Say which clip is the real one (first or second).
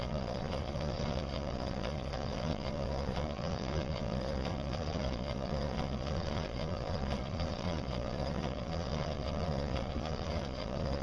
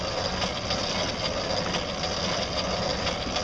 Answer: second